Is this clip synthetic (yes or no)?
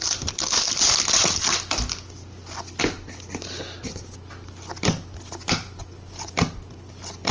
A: no